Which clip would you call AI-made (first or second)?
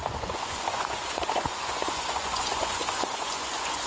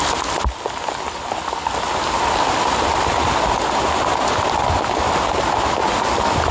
first